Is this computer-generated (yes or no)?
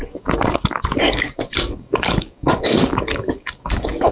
yes